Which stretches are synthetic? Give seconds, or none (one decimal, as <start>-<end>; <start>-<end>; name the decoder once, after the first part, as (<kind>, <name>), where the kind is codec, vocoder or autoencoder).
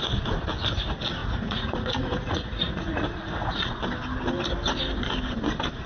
1.2-3.8 (vocoder, Vocos)